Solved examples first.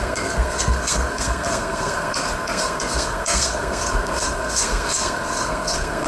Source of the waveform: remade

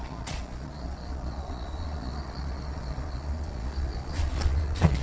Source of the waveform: remade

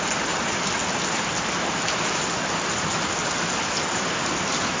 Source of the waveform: recorded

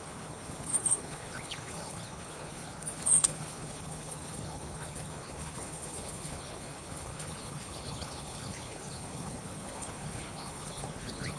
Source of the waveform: remade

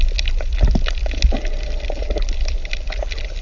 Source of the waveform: recorded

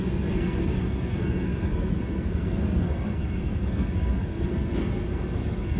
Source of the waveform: remade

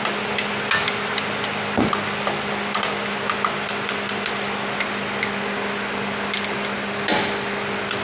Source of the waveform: recorded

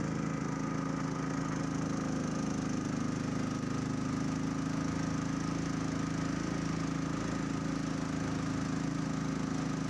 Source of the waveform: recorded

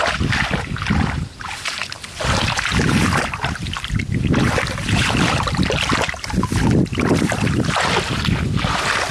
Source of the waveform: recorded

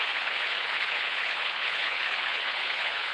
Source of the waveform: remade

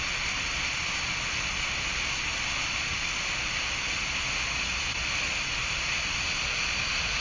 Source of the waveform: recorded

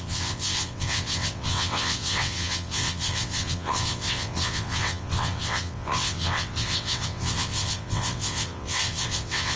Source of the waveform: remade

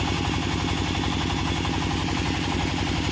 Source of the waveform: recorded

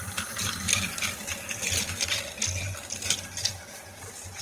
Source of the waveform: recorded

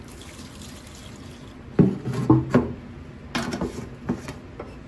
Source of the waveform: recorded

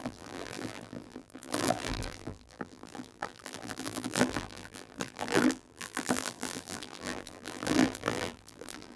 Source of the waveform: remade